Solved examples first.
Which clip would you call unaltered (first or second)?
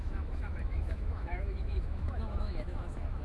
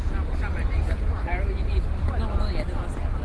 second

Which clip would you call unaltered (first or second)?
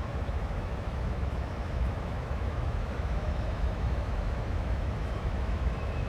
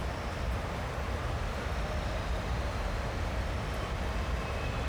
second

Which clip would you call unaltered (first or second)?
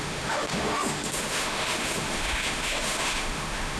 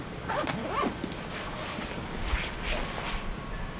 second